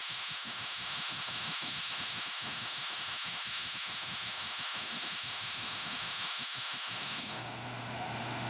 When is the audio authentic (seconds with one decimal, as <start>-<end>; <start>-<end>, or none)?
none